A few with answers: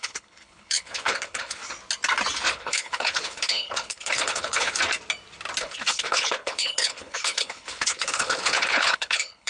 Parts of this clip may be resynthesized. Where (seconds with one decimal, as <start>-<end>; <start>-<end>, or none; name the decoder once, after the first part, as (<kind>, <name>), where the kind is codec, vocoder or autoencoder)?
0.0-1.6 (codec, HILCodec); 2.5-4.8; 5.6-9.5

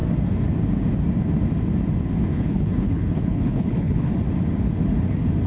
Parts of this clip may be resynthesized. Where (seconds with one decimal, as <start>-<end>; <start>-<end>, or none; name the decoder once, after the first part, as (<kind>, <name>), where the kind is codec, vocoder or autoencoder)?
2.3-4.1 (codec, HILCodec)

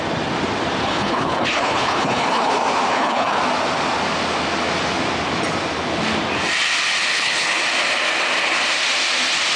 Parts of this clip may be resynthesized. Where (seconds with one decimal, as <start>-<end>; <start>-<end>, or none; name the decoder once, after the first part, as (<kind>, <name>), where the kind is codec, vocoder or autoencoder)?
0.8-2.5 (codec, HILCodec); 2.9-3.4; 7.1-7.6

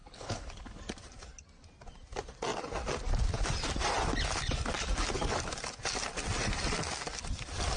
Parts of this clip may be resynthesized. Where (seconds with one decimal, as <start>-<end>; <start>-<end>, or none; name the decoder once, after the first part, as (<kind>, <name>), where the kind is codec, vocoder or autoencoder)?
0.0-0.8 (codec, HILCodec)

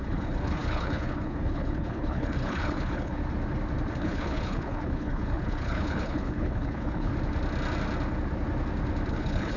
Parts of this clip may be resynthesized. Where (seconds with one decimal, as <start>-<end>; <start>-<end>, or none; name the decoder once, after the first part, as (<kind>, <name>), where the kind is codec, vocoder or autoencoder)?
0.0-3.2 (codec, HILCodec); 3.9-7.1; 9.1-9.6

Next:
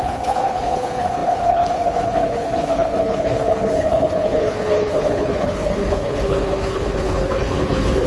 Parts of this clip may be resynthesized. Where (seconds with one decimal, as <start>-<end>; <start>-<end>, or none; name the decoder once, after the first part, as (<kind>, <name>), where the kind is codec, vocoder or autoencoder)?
0.0-8.1 (codec, HILCodec)

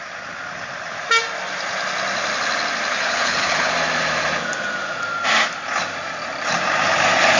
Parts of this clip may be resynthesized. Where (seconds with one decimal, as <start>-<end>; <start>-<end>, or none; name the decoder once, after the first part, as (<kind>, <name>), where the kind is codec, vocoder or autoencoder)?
2.9-3.7 (codec, HILCodec)